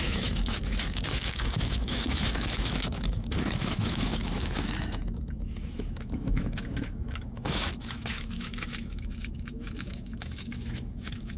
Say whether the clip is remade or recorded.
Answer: remade